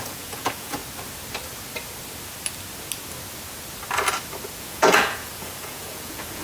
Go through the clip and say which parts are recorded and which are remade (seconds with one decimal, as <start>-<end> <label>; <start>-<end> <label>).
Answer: 0.0-0.8 remade; 0.8-4.6 recorded; 4.6-6.4 remade